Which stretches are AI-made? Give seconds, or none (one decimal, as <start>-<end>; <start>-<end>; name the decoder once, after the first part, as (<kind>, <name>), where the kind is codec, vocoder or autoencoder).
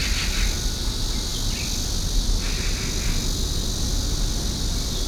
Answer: none